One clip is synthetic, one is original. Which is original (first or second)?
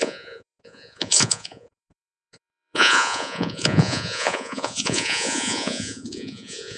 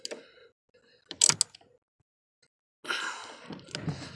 second